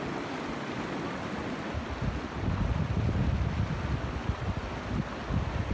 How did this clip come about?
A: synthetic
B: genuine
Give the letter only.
B